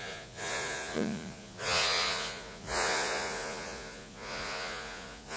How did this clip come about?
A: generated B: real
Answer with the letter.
A